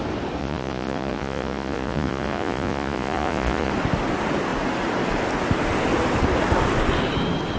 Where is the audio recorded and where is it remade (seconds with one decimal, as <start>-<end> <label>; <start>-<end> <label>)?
0.0-0.4 recorded; 0.4-3.7 remade; 3.7-7.6 recorded